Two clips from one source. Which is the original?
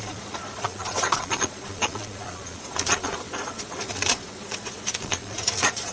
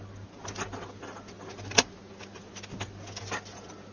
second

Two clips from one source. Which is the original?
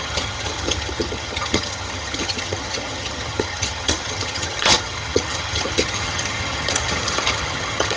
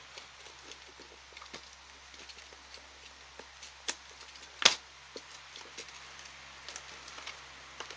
second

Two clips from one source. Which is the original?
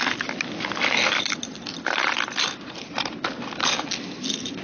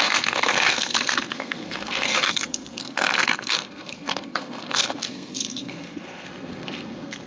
first